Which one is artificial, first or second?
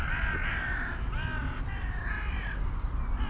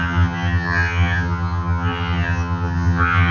second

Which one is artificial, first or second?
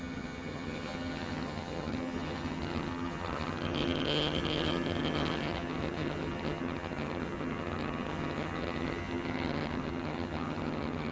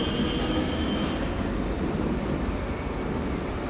first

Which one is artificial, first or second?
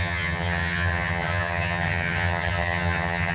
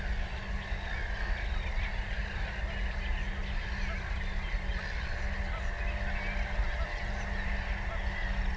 first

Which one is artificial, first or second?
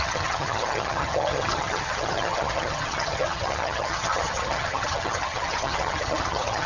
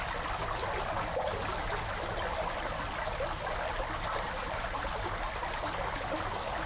first